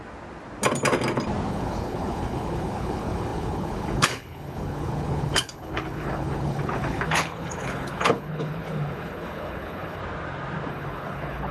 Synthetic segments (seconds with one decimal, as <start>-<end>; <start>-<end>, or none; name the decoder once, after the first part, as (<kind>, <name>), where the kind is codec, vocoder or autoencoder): 1.5-10.0 (codec, HILCodec); 10.7-11.5